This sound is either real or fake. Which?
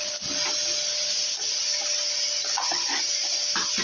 real